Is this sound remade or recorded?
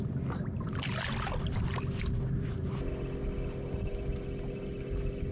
recorded